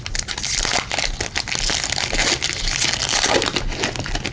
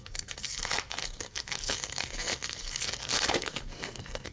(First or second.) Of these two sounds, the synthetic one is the second